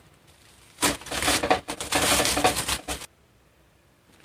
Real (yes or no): no